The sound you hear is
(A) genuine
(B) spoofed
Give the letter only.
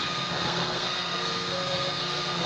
B